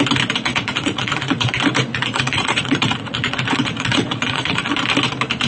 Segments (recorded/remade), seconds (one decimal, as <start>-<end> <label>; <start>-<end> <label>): 0.0-0.5 recorded; 0.5-1.5 remade; 1.5-1.9 recorded; 1.9-4.7 remade; 4.7-5.5 recorded